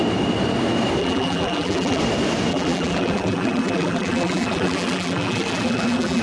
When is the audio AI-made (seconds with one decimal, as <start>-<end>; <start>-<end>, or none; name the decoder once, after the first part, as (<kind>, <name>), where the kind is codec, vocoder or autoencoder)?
1.0-2.0 (vocoder, BigVGAN v2); 2.5-6.2